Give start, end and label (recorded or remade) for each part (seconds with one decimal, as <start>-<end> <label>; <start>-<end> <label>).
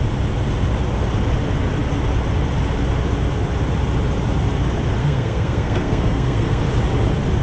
0.0-5.0 recorded; 5.0-6.6 remade; 6.6-7.4 recorded